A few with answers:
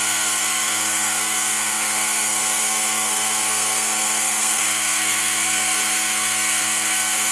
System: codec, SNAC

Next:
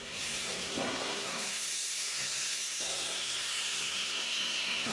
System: codec, SNAC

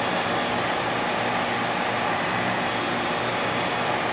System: none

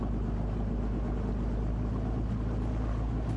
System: none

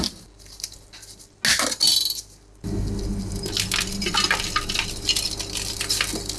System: none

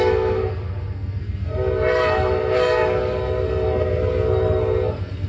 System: codec, SNAC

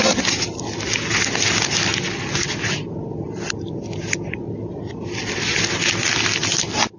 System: none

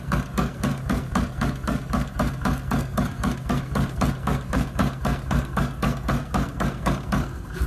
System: codec, SNAC